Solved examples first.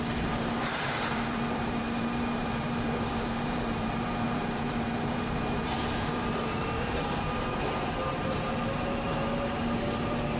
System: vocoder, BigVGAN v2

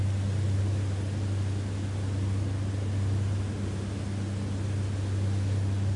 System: none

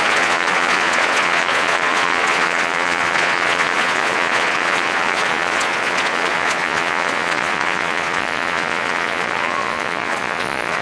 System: vocoder, Vocos